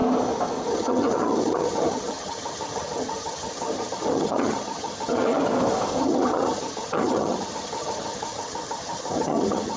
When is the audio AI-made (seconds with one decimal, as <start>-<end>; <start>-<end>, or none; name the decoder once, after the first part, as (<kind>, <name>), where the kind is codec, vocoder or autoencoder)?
0.7-5.4 (vocoder, HiFi-GAN); 6.0-9.8